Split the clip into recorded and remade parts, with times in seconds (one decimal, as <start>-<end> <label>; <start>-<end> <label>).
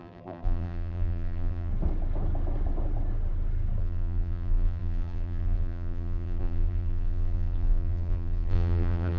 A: 0.0-1.7 remade; 1.7-3.8 recorded; 3.8-9.2 remade